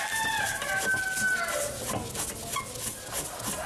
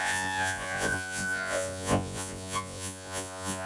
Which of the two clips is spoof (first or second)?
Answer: second